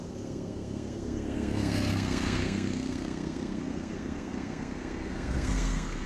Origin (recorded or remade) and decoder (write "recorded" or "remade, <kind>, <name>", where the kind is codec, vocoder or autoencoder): remade, codec, SNAC